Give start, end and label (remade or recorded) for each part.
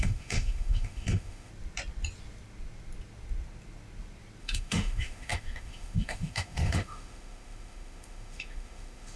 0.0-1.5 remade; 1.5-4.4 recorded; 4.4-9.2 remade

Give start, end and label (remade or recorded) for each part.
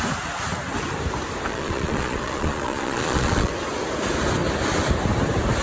0.0-1.5 recorded; 1.5-3.5 remade; 3.5-5.6 recorded